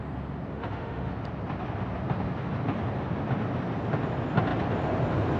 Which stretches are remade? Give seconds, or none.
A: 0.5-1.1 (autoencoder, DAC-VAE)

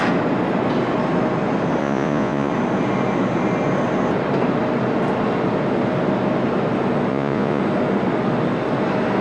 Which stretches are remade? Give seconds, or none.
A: 1.8-2.5 (vocoder, Vocos); 7.1-7.6

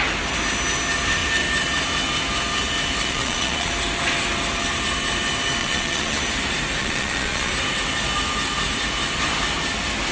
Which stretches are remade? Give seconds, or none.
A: 3.0-3.7 (vocoder, Vocos); 5.6-6.2; 6.8-7.5

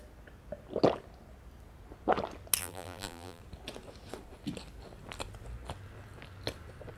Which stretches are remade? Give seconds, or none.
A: 2.6-3.4 (vocoder, BigVGAN v2)

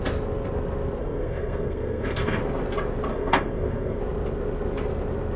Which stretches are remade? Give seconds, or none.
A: 1.0-2.4 (codec, SNAC); 3.1-4.0

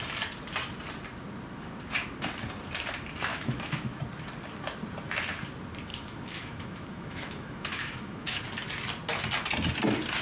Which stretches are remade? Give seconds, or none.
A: 3.3-4.0 (autoencoder, DAC-VAE); 5.9-8.4

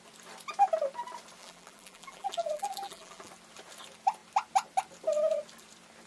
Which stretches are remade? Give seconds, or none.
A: 1.4-3.3 (vocoder, BigVGAN v2)

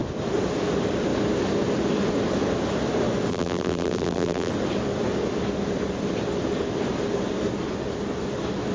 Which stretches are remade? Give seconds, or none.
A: 3.3-4.5 (vocoder, BigVGAN v2)